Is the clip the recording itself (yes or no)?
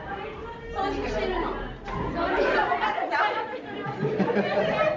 yes